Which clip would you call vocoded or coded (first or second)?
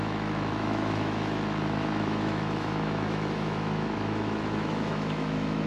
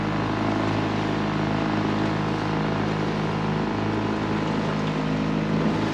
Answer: first